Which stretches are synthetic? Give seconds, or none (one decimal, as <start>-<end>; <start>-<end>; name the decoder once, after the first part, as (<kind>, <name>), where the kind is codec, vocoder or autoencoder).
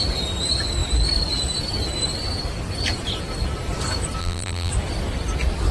4.2-4.7 (vocoder, BigVGAN v2)